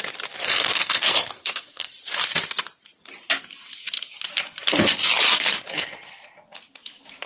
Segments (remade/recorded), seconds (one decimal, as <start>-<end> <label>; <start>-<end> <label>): 0.0-0.4 recorded; 0.4-1.9 remade; 1.9-7.3 recorded